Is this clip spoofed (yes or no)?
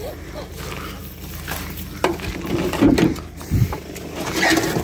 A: no